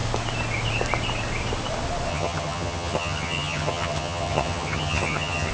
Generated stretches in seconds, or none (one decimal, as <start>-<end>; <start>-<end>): 2.1-5.5